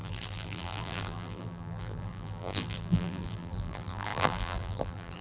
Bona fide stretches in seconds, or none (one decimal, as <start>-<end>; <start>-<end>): none